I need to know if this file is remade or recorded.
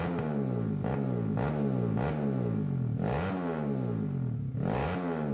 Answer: recorded